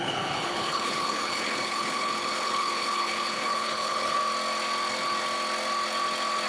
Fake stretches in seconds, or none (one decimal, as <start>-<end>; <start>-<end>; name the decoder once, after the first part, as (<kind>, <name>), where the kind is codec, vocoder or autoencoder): 0.0-4.2 (codec, HILCodec)